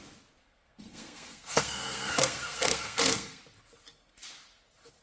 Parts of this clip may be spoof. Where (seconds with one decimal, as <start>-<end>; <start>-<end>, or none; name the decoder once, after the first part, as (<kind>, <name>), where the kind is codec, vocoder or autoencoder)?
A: 0.4-3.4 (codec, SNAC)